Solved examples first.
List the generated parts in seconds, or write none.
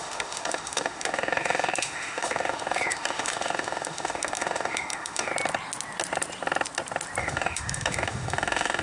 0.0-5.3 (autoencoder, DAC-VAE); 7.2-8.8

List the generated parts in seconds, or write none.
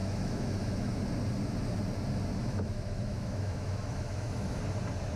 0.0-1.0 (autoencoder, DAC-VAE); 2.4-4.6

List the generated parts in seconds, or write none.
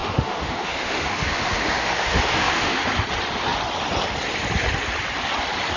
0.0-2.8 (autoencoder, DAC-VAE)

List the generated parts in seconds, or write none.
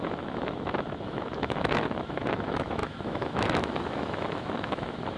0.0-5.2 (autoencoder, DAC-VAE)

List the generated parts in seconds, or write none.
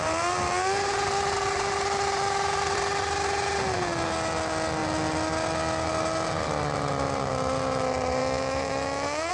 8.2-9.3 (autoencoder, DAC-VAE)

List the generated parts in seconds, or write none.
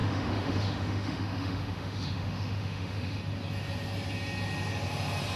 0.0-3.2 (autoencoder, DAC-VAE)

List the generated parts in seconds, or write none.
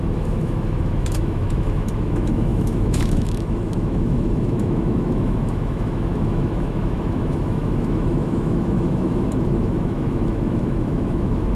0.0-11.6 (autoencoder, DAC-VAE)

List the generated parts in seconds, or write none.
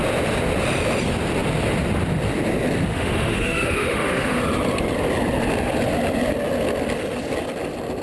2.9-4.4 (autoencoder, DAC-VAE)